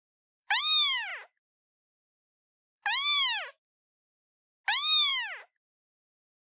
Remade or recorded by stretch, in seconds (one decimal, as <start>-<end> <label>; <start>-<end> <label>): 0.0-0.6 remade; 0.6-1.1 recorded; 1.1-3.5 remade; 3.5-5.1 recorded; 5.1-6.0 remade; 6.0-6.6 recorded